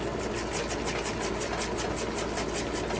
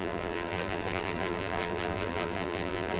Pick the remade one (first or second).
second